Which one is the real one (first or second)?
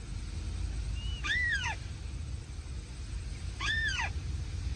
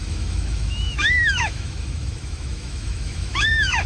first